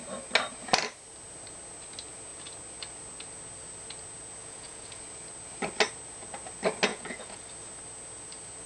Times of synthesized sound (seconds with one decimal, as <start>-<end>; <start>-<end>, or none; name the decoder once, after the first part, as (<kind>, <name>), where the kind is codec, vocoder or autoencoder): 4.4-5.0 (vocoder, Vocos); 6.9-7.5